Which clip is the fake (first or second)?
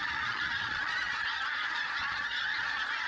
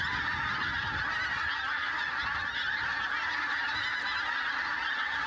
first